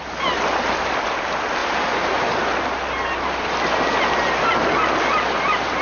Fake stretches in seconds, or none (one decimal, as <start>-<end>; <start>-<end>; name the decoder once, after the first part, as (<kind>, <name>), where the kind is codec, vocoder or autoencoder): none